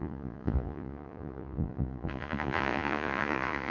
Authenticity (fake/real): fake